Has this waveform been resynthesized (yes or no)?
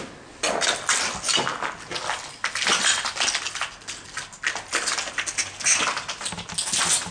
no